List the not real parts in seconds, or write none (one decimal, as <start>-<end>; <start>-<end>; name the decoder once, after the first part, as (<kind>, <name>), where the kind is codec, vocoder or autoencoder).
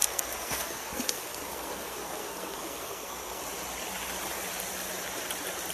0.0-3.4 (codec, SNAC)